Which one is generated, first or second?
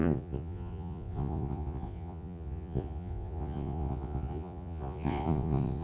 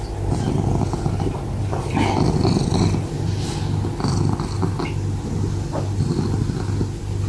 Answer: first